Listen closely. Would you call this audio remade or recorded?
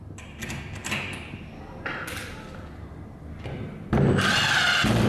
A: recorded